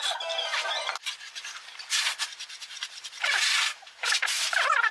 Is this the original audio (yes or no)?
yes